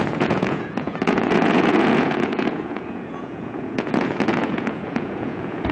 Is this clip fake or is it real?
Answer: fake